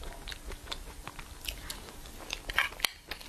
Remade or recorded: recorded